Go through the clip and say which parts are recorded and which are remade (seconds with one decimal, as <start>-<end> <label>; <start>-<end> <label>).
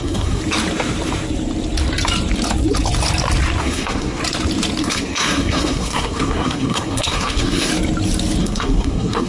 0.0-0.4 remade; 0.4-3.6 recorded; 3.6-4.2 remade; 4.2-4.8 recorded; 4.8-7.7 remade; 7.7-8.4 recorded; 8.4-9.3 remade